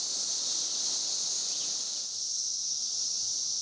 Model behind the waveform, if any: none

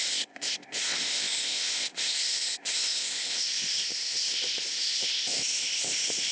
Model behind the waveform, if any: codec, ZipCodec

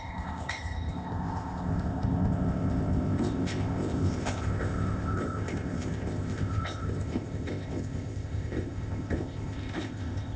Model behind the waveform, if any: codec, ZipCodec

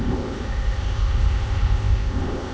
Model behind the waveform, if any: codec, ZipCodec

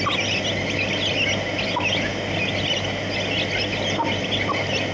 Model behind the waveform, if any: none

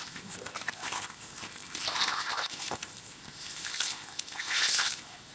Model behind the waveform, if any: codec, ZipCodec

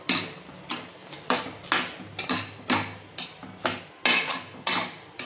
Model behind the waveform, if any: none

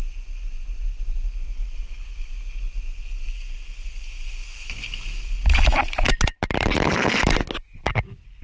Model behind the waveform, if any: none